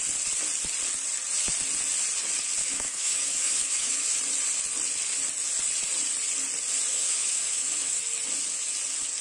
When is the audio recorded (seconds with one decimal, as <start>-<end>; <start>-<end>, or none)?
0.0-2.6; 4.2-6.9; 8.0-9.2